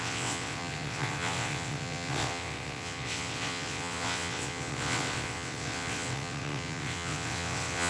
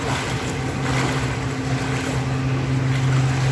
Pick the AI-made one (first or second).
first